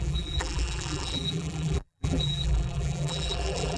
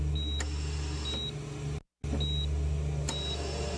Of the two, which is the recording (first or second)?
second